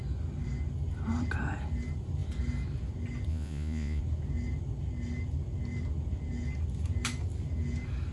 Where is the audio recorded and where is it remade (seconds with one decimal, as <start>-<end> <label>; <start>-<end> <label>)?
0.0-3.3 recorded; 3.3-4.0 remade; 4.0-8.1 recorded